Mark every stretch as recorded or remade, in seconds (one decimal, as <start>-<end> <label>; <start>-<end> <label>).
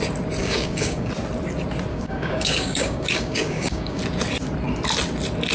0.0-0.4 recorded; 0.4-1.1 remade; 1.1-1.9 recorded; 1.9-4.0 remade; 4.0-5.5 recorded